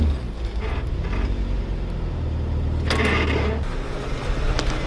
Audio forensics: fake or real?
real